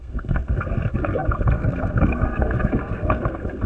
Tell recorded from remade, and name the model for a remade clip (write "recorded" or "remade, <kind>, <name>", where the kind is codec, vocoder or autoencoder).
remade, codec, SNAC